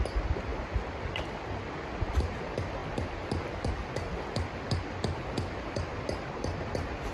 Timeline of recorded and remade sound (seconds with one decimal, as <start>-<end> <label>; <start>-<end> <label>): 0.0-7.1 recorded